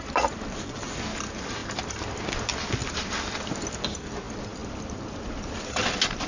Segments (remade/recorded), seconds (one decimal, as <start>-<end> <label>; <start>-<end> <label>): 0.0-6.3 recorded